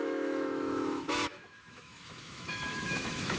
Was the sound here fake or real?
fake